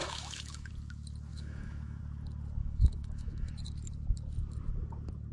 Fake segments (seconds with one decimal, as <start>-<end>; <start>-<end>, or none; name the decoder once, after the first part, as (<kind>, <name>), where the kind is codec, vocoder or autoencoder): 0.0-0.7 (autoencoder, DAC-VAE); 1.3-2.0; 2.6-3.5